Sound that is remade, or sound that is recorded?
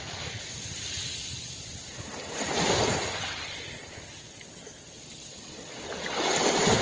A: recorded